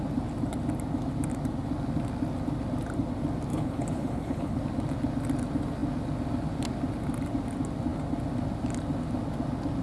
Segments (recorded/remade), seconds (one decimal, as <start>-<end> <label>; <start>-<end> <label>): 0.0-3.5 recorded; 3.5-4.6 remade; 4.6-9.8 recorded